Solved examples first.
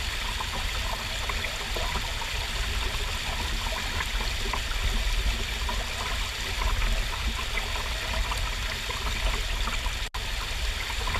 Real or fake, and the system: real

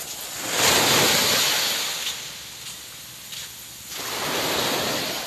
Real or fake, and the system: real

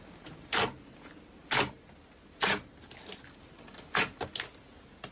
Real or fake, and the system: real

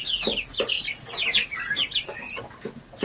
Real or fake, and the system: real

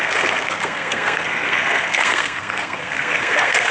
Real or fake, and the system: fake, codec, SNAC